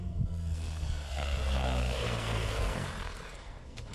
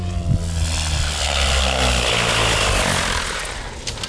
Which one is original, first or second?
second